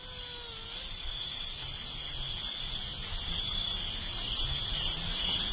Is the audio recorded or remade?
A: recorded